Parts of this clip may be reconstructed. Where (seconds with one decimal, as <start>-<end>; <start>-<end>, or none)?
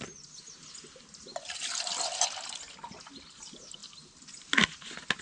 none